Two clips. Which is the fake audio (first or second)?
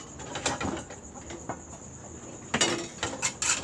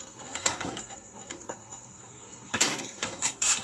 second